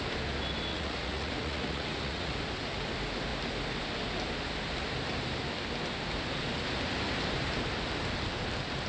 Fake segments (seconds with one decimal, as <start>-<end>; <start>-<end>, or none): 0.7-2.3